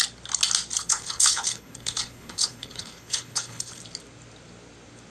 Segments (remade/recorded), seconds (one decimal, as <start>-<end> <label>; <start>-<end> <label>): 0.0-0.8 recorded; 0.8-3.8 remade; 3.8-5.1 recorded